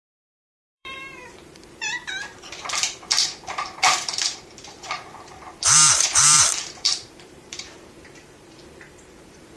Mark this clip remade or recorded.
remade